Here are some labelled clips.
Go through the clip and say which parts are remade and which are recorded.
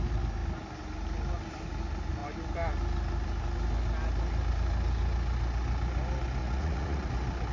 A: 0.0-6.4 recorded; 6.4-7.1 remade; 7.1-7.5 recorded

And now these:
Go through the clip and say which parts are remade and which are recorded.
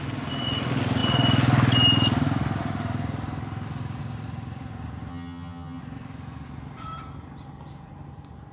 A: 0.0-5.1 recorded; 5.1-5.8 remade; 5.8-8.5 recorded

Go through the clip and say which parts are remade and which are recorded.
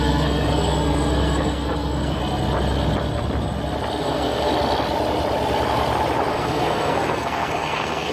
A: 0.0-2.2 remade; 2.2-4.0 recorded; 4.0-4.5 remade; 4.5-6.3 recorded; 6.3-8.1 remade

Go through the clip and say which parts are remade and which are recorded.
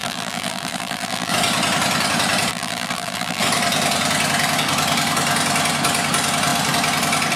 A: 0.0-1.3 remade; 1.3-2.5 recorded; 2.5-3.4 remade; 3.4-7.4 recorded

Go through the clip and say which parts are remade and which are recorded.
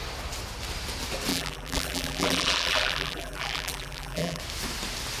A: 0.0-1.3 recorded; 1.3-4.4 remade; 4.4-5.2 recorded